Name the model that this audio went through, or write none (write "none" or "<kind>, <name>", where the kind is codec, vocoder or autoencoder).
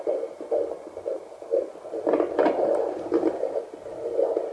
none